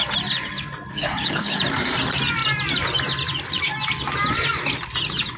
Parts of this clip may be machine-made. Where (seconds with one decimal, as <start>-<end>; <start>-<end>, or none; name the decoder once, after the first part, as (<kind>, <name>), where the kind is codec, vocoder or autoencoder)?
0.9-1.6 (codec, HILCodec)